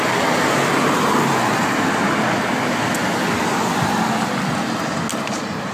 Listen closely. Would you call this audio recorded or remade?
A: recorded